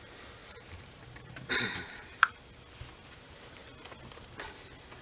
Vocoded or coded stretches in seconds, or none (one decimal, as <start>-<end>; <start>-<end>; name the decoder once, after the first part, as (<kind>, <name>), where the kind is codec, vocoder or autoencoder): 0.4-2.3 (vocoder, BigVGAN v2)